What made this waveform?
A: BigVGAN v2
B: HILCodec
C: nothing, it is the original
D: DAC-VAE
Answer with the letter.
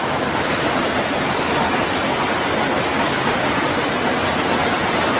C